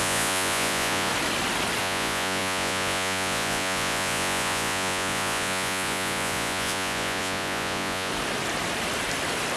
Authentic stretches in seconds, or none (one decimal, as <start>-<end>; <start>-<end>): 1.1-1.8; 8.1-9.6